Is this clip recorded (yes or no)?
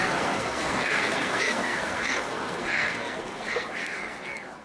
no